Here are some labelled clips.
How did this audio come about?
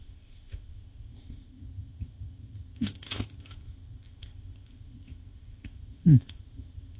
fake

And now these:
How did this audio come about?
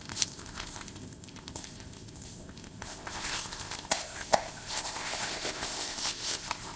fake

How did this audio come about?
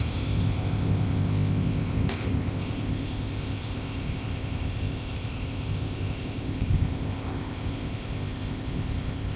fake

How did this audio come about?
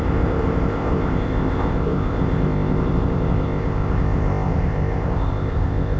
fake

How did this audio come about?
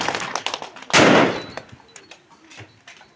real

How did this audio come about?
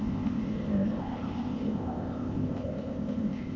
fake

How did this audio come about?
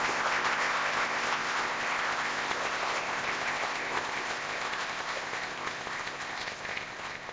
fake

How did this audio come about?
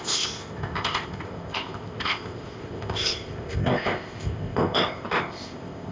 fake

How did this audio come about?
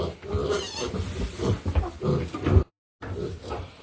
real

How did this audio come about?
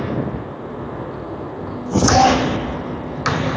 real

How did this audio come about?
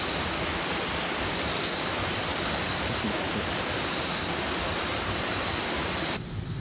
real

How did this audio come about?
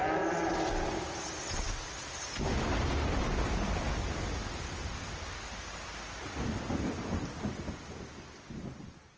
real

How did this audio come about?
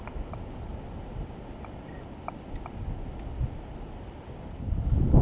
real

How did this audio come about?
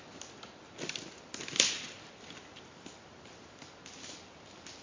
real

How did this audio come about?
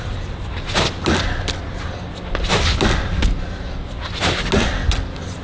real